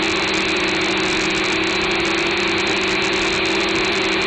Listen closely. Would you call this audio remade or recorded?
recorded